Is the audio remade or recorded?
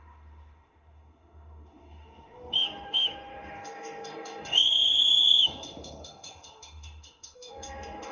remade